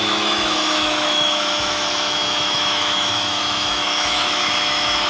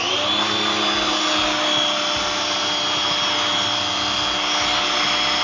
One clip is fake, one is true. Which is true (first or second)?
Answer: second